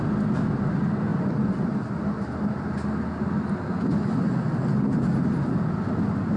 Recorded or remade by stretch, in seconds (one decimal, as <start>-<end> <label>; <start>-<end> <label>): 0.0-6.4 recorded